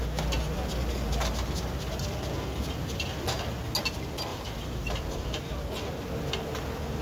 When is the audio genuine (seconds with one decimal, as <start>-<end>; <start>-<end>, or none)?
0.0-0.8; 1.3-4.3; 5.7-7.0